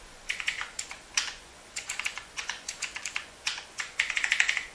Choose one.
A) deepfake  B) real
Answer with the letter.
A